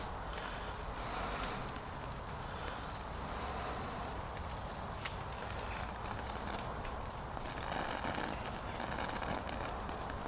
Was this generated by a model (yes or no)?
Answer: no